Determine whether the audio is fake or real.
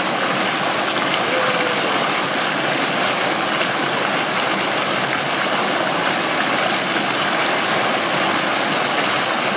real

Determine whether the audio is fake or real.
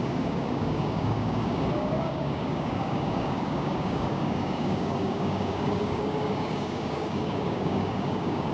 fake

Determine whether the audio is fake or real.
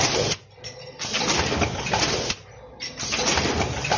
real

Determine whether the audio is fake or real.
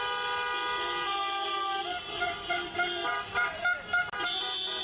real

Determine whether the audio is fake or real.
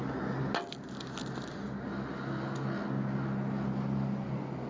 real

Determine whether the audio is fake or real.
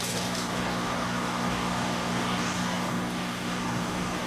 fake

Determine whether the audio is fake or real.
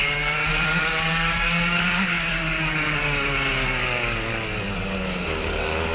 fake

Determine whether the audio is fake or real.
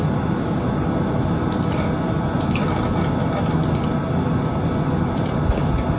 real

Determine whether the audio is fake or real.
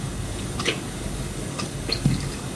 fake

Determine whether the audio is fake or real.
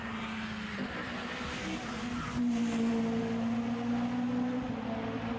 real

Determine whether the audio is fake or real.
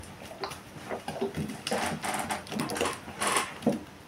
real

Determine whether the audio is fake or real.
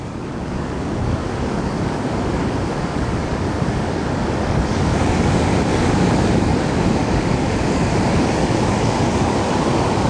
fake